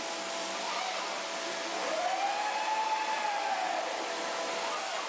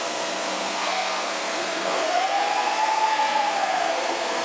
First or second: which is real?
first